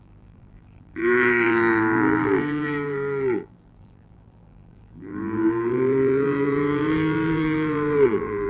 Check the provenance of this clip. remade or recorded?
remade